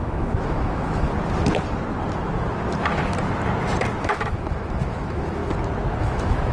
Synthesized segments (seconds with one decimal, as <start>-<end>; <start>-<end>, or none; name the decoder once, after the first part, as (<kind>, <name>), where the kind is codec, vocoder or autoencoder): 0.0-1.1 (autoencoder, DAC-VAE); 4.0-5.4; 6.0-6.5